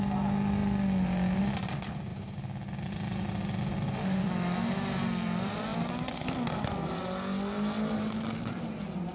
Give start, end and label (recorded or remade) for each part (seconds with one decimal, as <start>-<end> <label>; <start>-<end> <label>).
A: 0.0-9.1 recorded